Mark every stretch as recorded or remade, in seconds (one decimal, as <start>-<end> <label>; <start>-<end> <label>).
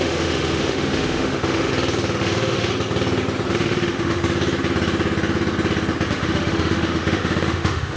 0.0-1.7 remade; 1.7-2.2 recorded; 2.2-2.7 remade; 2.7-3.5 recorded; 3.5-4.2 remade; 4.2-6.1 recorded; 6.1-8.0 remade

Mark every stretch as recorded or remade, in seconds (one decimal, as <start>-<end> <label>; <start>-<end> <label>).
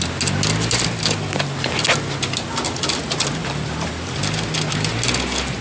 0.0-3.4 recorded; 3.4-4.2 remade; 4.2-5.6 recorded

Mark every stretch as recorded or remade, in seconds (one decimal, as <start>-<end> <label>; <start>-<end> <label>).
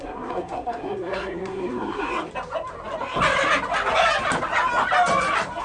0.0-2.1 remade; 2.1-5.6 recorded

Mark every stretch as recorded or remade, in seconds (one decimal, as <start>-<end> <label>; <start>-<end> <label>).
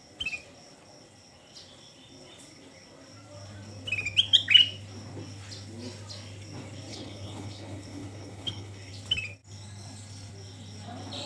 0.0-6.9 recorded; 6.9-8.9 remade; 8.9-11.3 recorded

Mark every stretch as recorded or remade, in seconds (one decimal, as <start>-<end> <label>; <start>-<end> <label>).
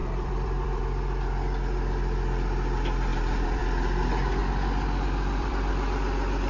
0.0-0.8 remade; 0.8-3.1 recorded; 3.1-3.6 remade; 3.6-4.4 recorded; 4.4-5.7 remade; 5.7-6.5 recorded